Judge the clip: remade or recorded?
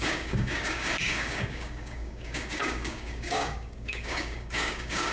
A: remade